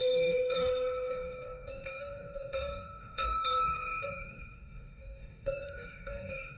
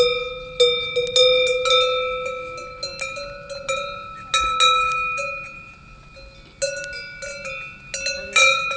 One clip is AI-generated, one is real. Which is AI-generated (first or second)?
first